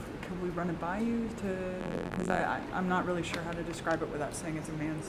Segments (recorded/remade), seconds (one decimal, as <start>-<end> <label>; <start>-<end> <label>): 0.0-1.8 recorded; 1.8-2.4 remade; 2.4-5.1 recorded